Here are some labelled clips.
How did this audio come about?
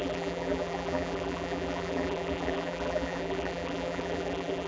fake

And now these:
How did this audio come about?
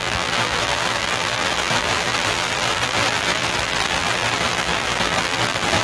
fake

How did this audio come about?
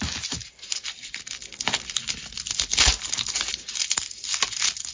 real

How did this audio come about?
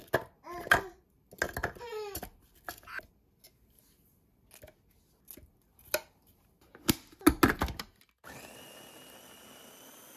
real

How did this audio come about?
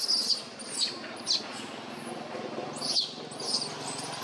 real